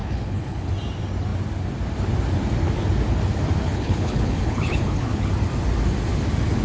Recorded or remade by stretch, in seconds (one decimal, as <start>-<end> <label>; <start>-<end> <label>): 0.0-0.7 remade; 0.7-3.6 recorded; 3.6-5.3 remade; 5.3-6.6 recorded